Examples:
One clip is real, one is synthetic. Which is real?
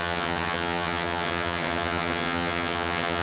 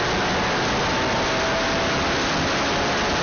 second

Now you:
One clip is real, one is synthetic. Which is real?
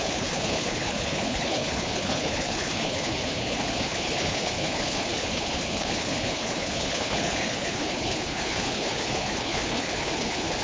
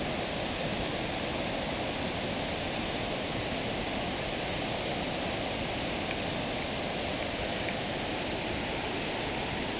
second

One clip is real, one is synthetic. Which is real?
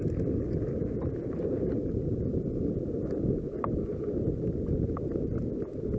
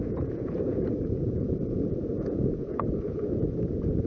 first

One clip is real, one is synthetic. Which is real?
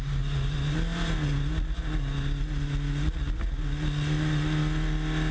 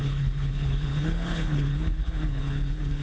first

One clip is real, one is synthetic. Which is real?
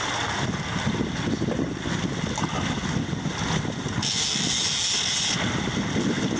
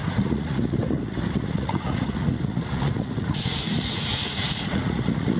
first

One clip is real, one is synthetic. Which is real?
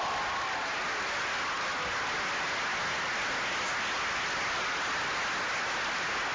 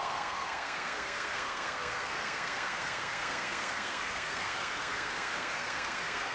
first